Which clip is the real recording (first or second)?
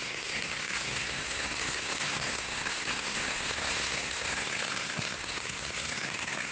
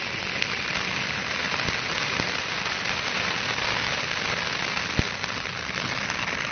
second